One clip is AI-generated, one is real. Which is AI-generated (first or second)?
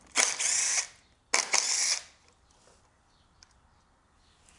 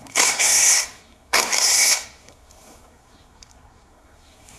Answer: second